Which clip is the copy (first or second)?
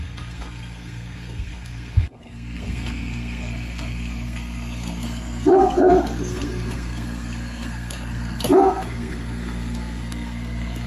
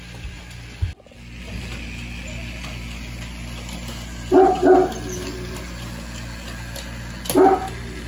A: first